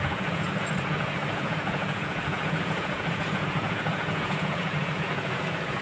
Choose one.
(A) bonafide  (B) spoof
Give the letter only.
B